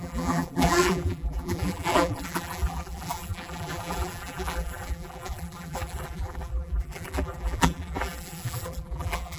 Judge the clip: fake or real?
fake